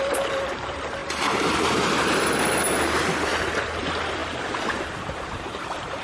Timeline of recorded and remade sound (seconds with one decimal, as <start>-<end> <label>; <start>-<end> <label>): 0.0-3.3 remade; 3.3-3.8 recorded; 3.8-4.2 remade; 4.2-4.8 recorded; 4.8-6.0 remade